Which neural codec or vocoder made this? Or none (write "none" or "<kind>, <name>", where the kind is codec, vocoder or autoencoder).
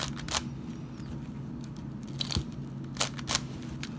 none